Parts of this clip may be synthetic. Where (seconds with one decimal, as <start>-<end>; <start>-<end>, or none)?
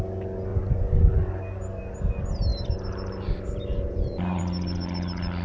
0.5-1.4; 2.5-4.4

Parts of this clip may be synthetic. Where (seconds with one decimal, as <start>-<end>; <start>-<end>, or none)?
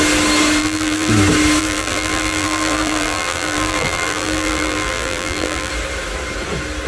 0.6-1.1; 1.6-5.7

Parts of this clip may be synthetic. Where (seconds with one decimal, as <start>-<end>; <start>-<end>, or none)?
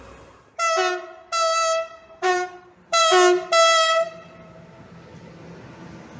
2.3-3.0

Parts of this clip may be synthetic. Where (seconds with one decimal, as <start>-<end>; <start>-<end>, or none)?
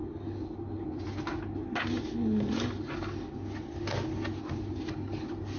none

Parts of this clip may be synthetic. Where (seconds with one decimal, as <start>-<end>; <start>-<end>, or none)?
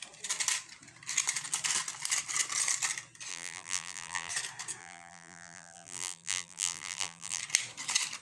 3.3-4.3; 4.8-7.4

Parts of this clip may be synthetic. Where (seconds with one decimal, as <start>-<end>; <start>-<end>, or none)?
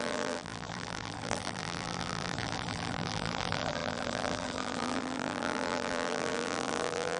0.0-7.2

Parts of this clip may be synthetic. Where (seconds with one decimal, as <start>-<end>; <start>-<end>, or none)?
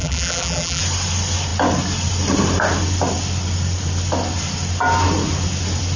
0.0-0.8